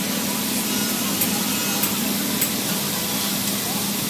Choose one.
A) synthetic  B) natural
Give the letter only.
B